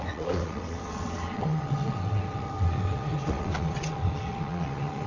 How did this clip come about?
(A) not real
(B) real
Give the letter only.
A